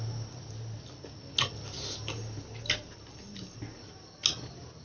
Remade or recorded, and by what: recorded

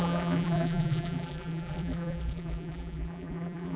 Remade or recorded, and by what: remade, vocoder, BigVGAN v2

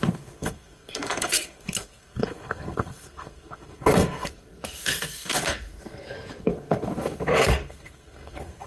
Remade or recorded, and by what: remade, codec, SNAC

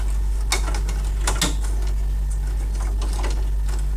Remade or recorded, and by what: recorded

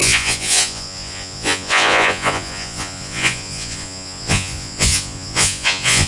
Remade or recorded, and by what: remade, vocoder, Vocos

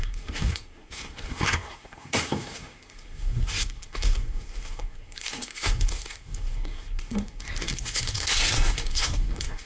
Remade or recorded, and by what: remade, codec, SNAC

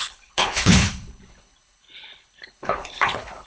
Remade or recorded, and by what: remade, codec, HILCodec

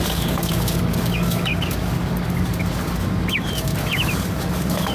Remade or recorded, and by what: remade, codec, DAC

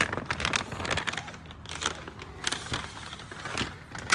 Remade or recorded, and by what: recorded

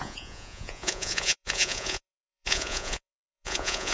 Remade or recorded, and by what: remade, vocoder, Vocos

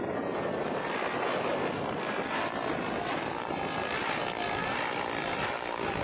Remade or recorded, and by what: recorded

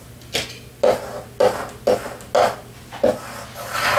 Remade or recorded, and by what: recorded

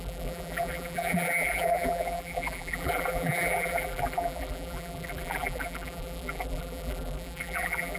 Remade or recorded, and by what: remade, vocoder, BigVGAN v2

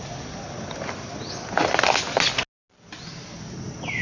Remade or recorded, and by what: recorded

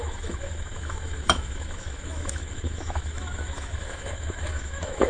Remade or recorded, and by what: remade, autoencoder, DAC-VAE